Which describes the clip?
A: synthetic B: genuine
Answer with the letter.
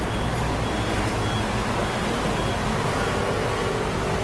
B